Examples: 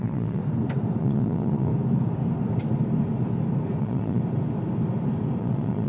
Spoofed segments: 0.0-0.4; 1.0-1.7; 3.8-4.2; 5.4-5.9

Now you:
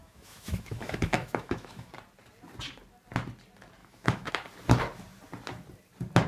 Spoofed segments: 0.0-1.9; 3.8-4.3

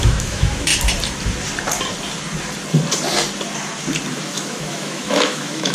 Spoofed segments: 0.0-0.7; 4.1-5.7

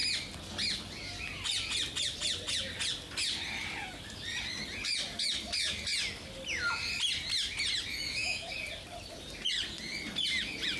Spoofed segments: 7.9-8.5

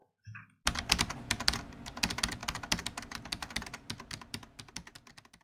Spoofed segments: none